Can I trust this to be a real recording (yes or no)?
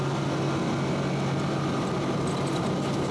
yes